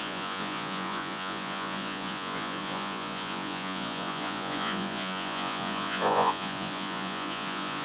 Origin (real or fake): fake